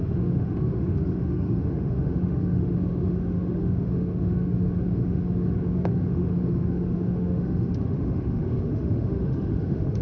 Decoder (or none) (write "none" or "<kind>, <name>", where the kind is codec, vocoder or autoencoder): autoencoder, DAC-VAE